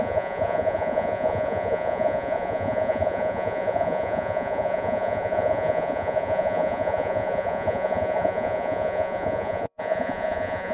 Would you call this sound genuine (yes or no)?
no